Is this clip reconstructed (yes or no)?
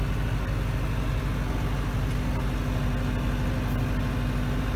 no